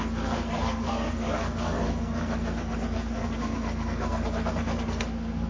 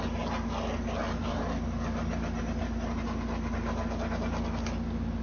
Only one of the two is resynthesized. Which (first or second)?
first